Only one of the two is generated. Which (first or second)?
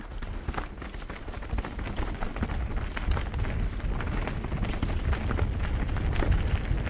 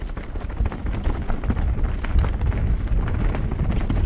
second